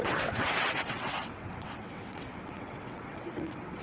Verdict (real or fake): fake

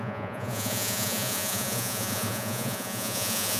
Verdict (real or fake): fake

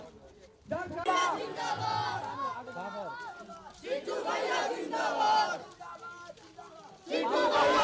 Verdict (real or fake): real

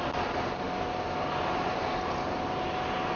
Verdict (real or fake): real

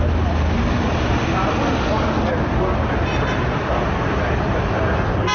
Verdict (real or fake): real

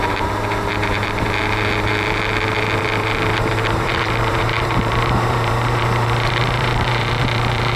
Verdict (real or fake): fake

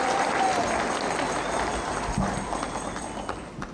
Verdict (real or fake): real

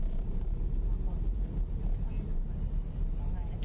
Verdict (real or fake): fake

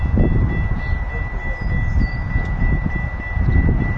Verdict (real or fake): real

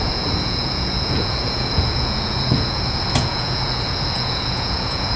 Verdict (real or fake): fake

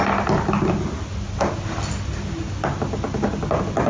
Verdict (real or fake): real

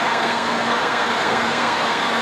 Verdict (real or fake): fake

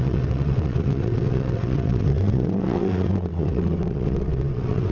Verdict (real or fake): fake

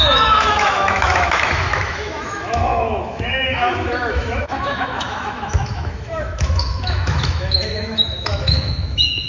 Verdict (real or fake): fake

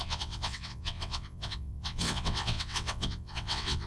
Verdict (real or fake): fake